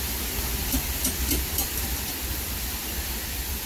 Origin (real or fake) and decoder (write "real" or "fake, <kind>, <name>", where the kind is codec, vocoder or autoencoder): fake, vocoder, BigVGAN v2